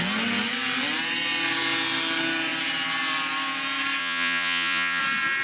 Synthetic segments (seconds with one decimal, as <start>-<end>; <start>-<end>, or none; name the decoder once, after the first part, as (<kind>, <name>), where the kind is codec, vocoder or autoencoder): 4.0-5.0 (vocoder, Vocos)